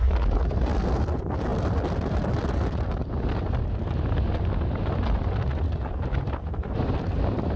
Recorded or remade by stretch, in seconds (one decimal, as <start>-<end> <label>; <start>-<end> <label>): 0.0-7.6 recorded